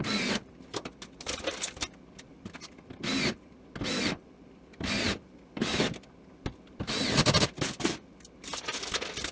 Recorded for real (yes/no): yes